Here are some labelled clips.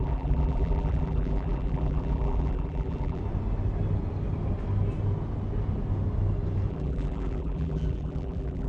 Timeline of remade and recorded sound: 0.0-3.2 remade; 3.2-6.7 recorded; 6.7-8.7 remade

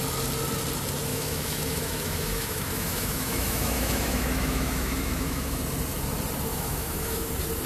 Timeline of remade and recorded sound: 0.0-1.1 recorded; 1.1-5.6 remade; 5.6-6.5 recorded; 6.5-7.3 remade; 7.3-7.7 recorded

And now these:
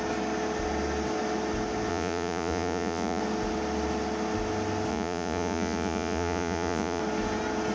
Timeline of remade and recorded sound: 0.0-1.9 recorded; 1.9-3.2 remade; 3.2-4.9 recorded; 4.9-7.0 remade; 7.0-7.7 recorded